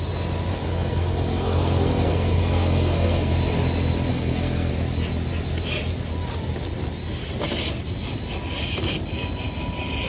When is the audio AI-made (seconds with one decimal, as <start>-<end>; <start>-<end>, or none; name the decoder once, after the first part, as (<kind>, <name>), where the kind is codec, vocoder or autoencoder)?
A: 0.5-3.3 (codec, SNAC); 4.1-4.7